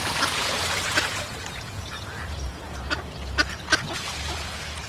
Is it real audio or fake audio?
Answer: fake